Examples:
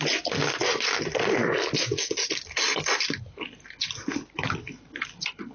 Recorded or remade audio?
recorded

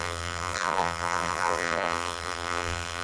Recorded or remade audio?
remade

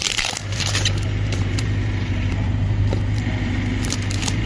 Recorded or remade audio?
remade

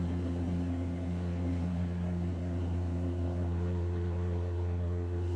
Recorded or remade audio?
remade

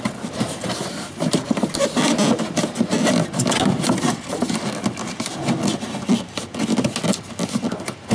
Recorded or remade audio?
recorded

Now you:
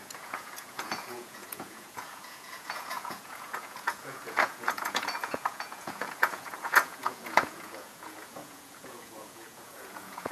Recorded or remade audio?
remade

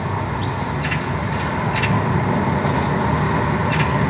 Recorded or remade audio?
recorded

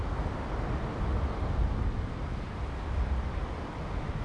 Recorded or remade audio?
recorded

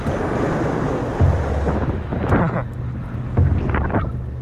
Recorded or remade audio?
recorded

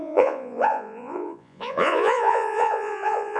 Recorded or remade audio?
remade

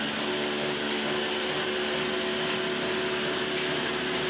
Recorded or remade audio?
recorded